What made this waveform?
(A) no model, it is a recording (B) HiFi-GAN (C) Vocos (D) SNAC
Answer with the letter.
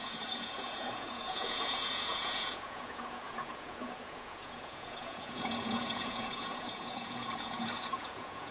C